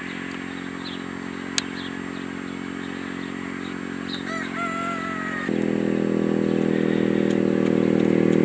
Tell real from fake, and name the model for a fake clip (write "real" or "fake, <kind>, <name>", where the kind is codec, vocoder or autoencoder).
real